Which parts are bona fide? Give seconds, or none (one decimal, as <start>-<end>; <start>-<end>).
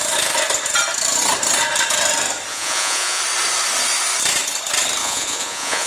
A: 0.0-2.5; 3.2-5.0